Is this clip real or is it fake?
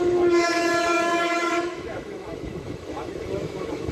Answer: fake